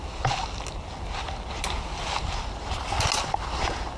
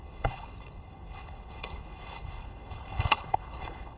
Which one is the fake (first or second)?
second